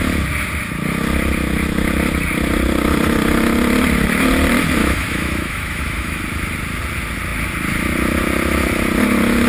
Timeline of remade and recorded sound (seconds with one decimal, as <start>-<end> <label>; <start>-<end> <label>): 0.0-4.8 recorded; 4.8-6.2 remade; 6.2-9.5 recorded